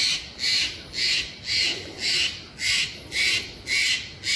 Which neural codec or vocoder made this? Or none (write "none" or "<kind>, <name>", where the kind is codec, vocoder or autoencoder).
none